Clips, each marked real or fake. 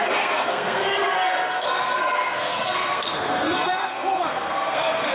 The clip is fake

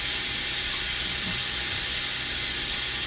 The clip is real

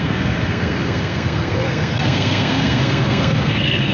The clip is fake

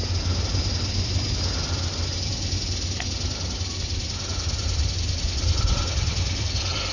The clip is real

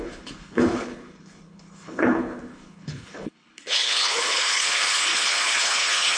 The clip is fake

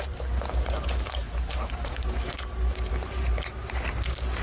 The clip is fake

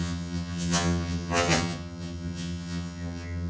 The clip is fake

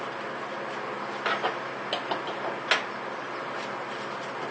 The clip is real